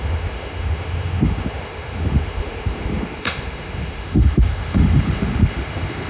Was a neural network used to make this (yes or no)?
yes